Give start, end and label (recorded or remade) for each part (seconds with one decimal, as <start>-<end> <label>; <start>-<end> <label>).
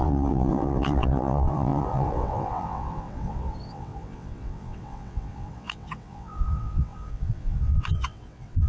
0.0-8.7 remade